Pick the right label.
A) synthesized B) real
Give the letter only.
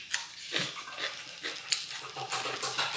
B